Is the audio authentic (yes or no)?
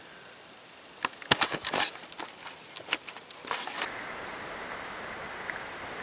yes